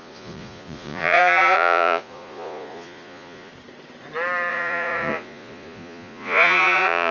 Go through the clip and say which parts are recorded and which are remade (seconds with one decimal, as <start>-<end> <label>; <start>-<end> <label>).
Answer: 0.0-3.5 remade; 3.5-4.5 recorded; 4.5-7.1 remade